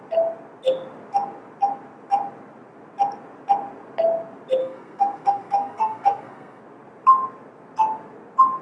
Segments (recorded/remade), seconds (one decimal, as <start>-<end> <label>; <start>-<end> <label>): 0.0-4.6 recorded; 4.6-6.6 remade; 6.6-8.6 recorded

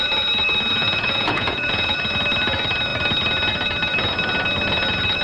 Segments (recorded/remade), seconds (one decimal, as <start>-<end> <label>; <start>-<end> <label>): 0.0-0.8 recorded; 0.8-2.0 remade; 2.0-5.2 recorded

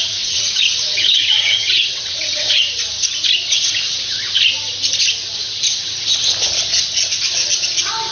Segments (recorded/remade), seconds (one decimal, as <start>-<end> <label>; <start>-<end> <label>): 0.0-2.6 remade; 2.6-3.5 recorded; 3.5-4.4 remade; 4.4-8.1 recorded

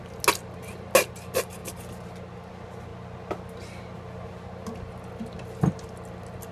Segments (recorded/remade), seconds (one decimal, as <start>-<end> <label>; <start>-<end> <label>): 0.0-6.5 recorded

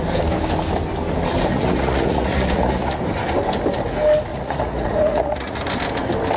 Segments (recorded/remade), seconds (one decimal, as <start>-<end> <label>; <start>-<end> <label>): 0.0-1.5 recorded; 1.5-3.0 remade; 3.0-4.3 recorded; 4.3-5.7 remade; 5.7-6.4 recorded

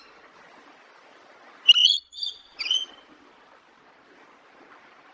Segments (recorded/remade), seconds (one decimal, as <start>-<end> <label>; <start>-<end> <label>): 0.0-1.8 recorded; 1.8-2.9 remade; 2.9-5.1 recorded

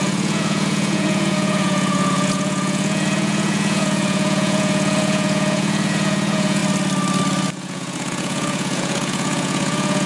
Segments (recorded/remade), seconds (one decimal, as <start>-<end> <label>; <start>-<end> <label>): 0.0-6.6 remade; 6.6-7.5 recorded; 7.5-10.1 remade